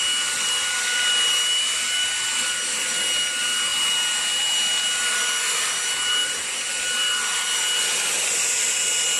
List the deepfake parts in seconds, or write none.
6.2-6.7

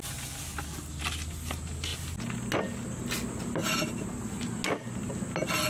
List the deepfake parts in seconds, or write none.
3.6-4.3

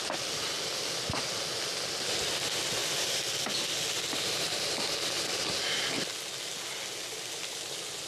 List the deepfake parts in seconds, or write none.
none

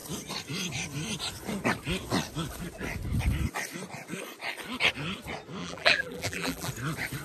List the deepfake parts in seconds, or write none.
5.6-6.7

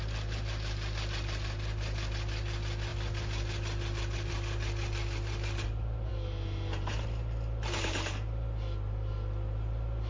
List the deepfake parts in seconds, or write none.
none

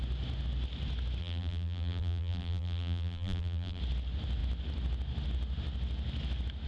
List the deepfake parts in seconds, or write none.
1.2-3.8

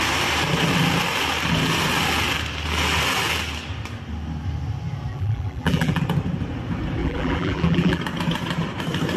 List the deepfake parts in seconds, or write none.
5.1-6.0; 7.0-8.0

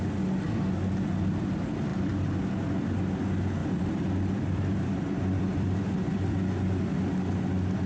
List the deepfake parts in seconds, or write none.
3.6-6.4